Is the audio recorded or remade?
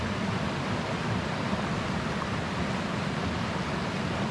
recorded